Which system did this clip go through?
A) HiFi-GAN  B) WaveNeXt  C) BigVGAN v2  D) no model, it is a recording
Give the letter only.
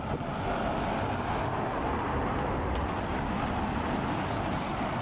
D